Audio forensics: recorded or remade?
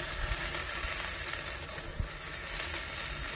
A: recorded